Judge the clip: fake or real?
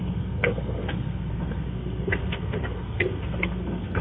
fake